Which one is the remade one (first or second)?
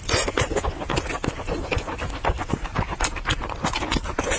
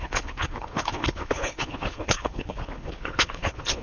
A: second